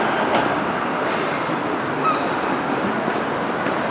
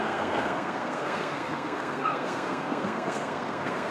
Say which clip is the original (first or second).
first